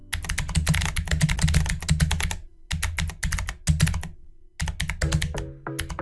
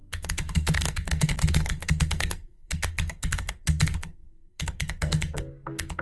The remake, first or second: second